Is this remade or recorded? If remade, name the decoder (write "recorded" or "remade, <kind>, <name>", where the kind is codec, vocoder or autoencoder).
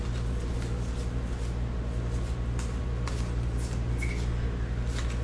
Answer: recorded